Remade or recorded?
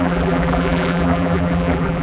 remade